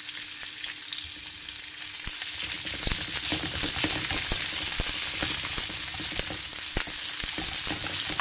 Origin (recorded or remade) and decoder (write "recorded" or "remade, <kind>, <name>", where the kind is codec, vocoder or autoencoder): recorded